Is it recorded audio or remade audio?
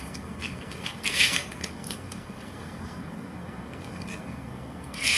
remade